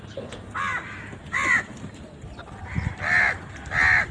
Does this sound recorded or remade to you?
recorded